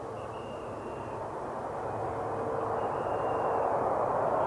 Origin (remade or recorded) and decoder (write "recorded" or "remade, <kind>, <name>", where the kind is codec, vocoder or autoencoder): recorded